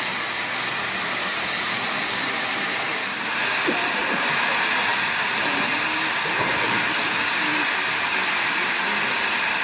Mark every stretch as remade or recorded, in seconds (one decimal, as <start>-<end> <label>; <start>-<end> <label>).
0.0-9.6 recorded